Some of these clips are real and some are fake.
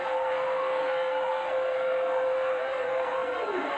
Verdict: fake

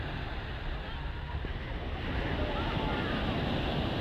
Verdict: real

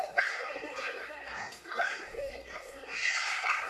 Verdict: fake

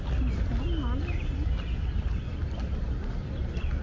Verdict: real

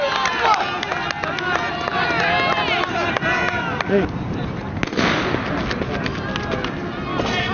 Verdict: real